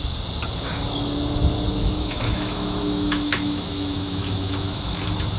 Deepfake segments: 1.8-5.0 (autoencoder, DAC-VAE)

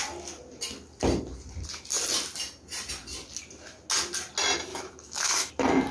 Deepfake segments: 4.7-5.5 (autoencoder, DAC-VAE)

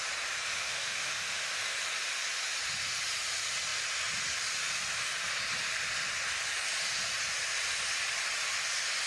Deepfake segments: 0.5-1.5 (autoencoder, DAC-VAE)

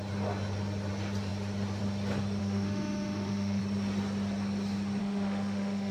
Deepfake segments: 2.4-3.6 (autoencoder, DAC-VAE); 5.0-5.9

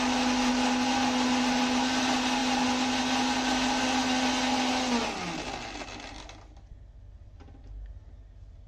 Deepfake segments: none

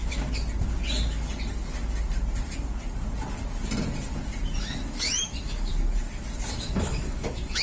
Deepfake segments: 4.6-5.7 (autoencoder, DAC-VAE); 6.5-7.6

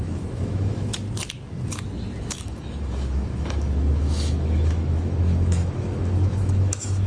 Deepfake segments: 0.0-0.9 (autoencoder, DAC-VAE); 2.3-7.1